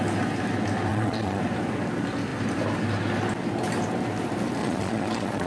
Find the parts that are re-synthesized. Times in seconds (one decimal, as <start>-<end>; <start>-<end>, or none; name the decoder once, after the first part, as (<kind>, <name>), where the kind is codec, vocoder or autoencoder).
0.9-1.4 (vocoder, Vocos); 4.6-5.5